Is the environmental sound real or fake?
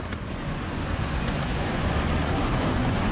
fake